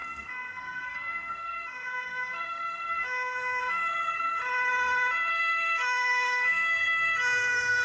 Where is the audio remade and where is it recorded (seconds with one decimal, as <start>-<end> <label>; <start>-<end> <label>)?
0.0-4.4 remade; 4.4-5.3 recorded; 5.3-7.8 remade